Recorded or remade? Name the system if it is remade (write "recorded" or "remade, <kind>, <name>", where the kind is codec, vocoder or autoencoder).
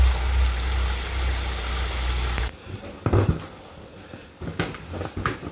recorded